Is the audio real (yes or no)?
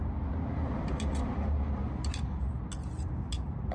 yes